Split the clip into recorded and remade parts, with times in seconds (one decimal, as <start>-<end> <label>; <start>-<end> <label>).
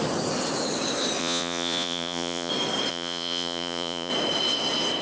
0.0-1.2 recorded; 1.2-2.5 remade; 2.5-2.9 recorded; 2.9-4.1 remade; 4.1-5.0 recorded